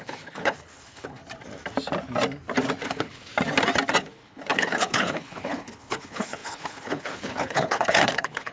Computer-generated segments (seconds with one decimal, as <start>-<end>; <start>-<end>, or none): 0.0-1.2; 2.9-3.3; 4.0-8.5